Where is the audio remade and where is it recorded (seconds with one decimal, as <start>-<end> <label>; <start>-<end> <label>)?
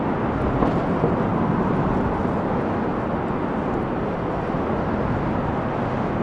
0.0-6.2 recorded